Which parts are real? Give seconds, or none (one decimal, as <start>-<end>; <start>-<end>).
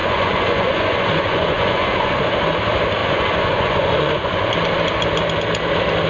2.3-3.0; 4.5-6.1